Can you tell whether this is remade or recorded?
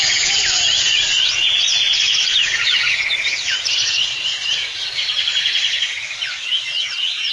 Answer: remade